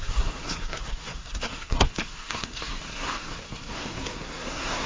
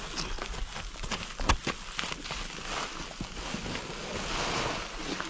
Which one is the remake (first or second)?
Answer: first